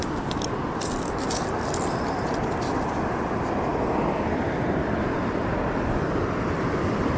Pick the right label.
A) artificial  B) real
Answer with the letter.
A